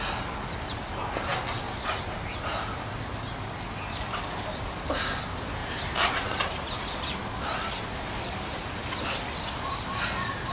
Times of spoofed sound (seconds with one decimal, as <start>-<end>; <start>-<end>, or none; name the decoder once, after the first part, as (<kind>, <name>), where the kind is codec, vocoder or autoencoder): 5.6-6.4 (vocoder, BigVGAN v2)